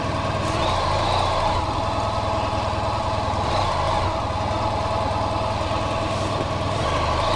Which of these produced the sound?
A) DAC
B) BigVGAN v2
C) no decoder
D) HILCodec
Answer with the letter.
C